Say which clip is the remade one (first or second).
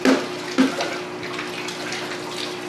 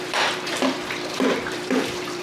second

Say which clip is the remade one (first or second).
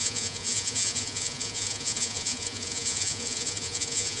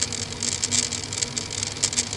first